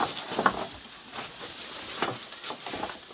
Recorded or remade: recorded